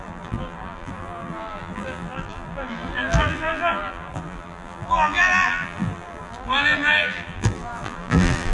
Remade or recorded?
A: remade